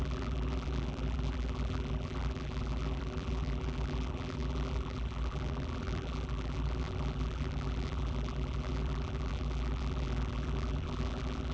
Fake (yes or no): yes